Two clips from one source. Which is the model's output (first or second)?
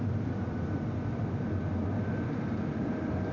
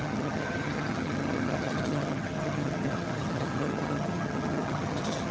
second